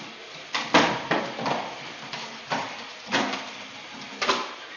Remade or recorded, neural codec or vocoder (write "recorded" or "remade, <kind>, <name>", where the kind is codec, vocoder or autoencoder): remade, vocoder, BigVGAN v2